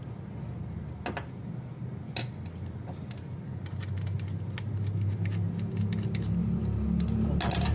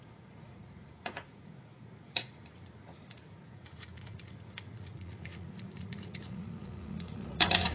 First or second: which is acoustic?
first